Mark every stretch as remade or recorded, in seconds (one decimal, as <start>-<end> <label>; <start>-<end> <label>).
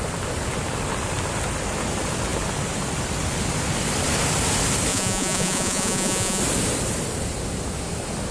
0.0-4.9 recorded; 4.9-6.4 remade; 6.4-8.3 recorded